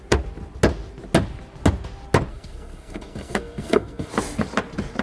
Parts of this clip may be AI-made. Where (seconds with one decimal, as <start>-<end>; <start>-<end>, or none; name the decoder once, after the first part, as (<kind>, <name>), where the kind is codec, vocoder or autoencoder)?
2.3-4.1 (codec, SNAC)